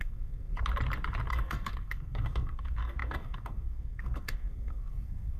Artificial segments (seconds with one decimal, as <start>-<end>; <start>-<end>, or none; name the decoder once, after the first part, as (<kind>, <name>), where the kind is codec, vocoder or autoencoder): 0.0-0.5 (codec, SNAC); 1.3-5.4